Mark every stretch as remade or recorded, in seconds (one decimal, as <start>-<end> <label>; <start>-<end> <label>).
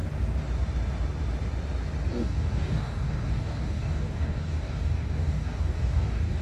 0.0-2.1 recorded; 2.1-6.4 remade